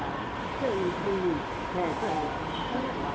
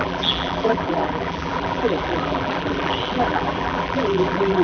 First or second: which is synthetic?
second